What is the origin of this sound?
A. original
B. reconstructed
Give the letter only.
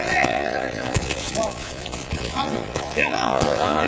B